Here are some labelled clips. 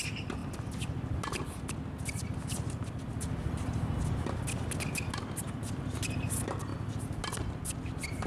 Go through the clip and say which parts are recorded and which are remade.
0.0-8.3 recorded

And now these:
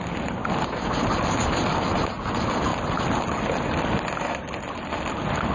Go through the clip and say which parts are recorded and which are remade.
0.0-5.5 recorded

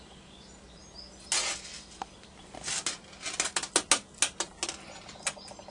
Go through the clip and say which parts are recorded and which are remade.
0.0-5.7 recorded

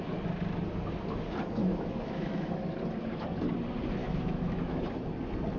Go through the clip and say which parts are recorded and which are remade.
0.0-1.6 recorded; 1.6-2.6 remade; 2.6-4.0 recorded; 4.0-4.8 remade; 4.8-5.6 recorded

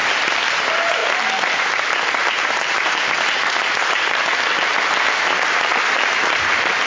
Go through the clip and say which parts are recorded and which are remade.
0.0-0.6 recorded; 0.6-1.0 remade; 1.0-1.6 recorded; 1.6-6.9 remade